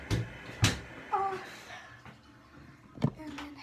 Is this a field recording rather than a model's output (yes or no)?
yes